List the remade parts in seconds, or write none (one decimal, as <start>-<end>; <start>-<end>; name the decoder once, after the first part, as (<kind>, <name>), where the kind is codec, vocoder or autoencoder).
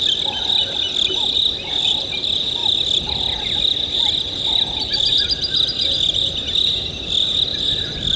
none